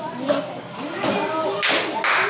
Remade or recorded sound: recorded